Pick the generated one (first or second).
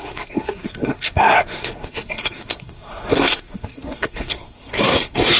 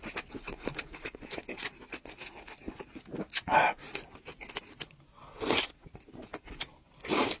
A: first